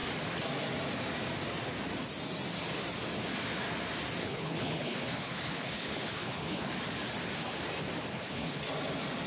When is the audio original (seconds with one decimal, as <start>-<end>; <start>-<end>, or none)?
0.0-4.2; 6.7-8.1; 8.6-9.3